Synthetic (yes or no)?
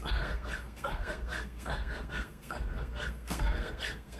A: yes